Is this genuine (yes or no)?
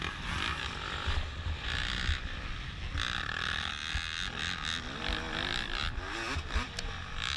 yes